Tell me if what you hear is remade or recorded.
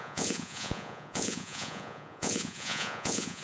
remade